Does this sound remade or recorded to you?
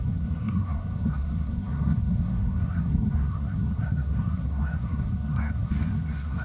remade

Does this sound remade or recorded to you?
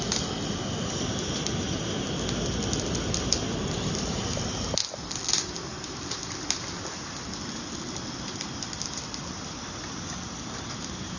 recorded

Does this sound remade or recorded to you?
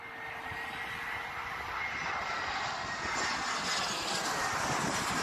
recorded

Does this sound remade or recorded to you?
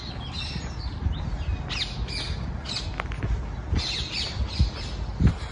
recorded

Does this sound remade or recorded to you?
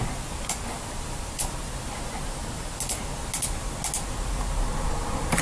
recorded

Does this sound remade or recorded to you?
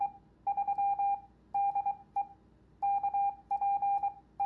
recorded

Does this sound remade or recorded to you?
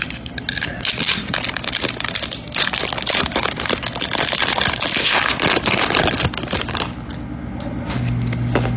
recorded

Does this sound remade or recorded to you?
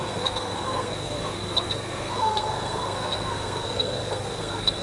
remade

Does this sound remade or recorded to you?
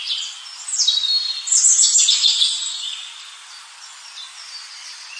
recorded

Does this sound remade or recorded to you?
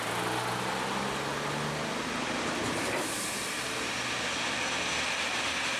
recorded